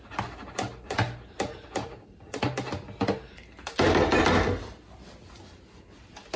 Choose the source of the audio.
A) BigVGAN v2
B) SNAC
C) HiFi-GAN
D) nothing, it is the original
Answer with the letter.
D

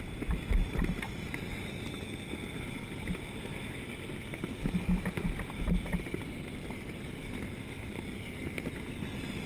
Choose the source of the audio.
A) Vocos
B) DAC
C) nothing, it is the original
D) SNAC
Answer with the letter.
C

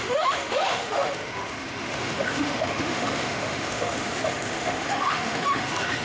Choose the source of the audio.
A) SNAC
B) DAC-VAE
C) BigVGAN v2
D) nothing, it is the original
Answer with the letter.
B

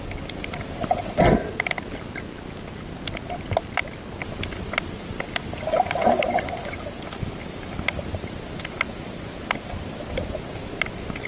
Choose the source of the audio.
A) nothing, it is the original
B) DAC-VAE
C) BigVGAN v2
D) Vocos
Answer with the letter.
A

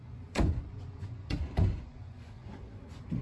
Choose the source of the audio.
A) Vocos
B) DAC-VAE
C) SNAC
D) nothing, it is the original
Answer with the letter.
A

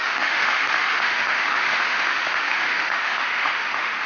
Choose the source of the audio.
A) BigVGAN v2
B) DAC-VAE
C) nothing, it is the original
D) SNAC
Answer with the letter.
B